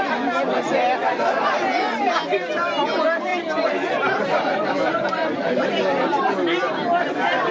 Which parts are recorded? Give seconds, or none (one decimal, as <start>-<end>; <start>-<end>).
0.0-3.3; 6.2-7.5